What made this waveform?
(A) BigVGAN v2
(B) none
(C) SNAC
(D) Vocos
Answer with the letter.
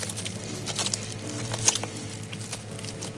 B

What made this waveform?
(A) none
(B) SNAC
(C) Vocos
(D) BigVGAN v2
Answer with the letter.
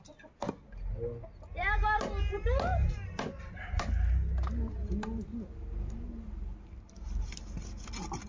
A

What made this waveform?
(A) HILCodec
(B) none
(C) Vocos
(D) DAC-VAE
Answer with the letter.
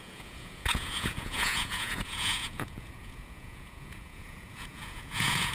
C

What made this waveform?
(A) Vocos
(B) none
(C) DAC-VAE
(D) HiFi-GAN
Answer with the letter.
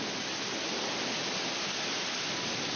B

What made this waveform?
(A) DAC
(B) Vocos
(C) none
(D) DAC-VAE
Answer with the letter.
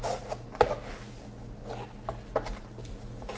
C